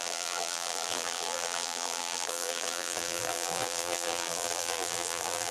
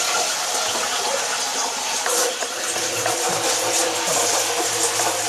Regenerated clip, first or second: first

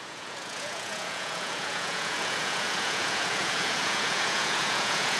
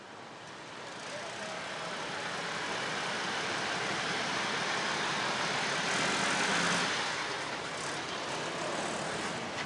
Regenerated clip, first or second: first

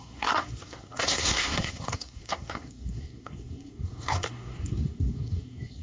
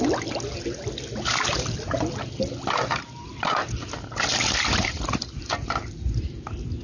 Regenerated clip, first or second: first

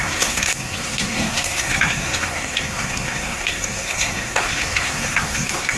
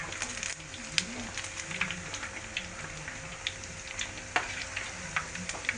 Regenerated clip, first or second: first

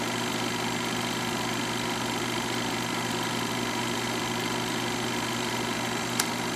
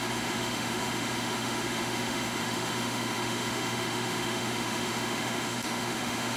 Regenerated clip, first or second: second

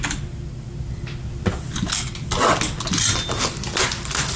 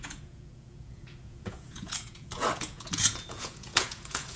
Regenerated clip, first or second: second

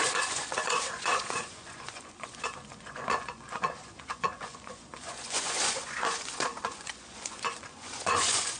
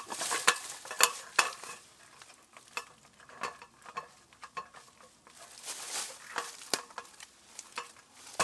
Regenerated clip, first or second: first